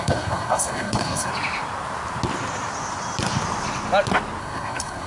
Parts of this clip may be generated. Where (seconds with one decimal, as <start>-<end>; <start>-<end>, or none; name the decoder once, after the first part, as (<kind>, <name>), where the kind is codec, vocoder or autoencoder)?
0.0-1.3 (codec, SNAC); 4.4-5.1